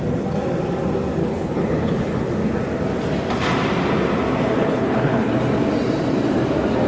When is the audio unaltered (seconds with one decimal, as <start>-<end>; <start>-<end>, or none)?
0.0-1.2; 2.3-4.6; 5.3-6.9